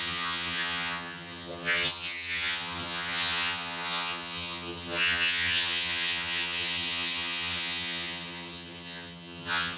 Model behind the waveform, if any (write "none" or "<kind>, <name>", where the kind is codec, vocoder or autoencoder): vocoder, HiFi-GAN